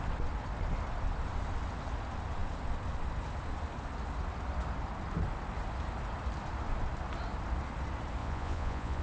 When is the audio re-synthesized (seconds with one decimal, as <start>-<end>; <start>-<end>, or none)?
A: 8.2-9.0